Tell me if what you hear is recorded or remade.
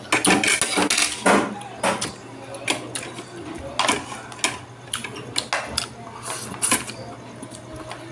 recorded